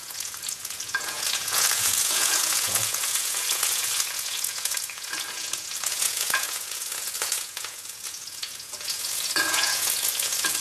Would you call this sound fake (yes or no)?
yes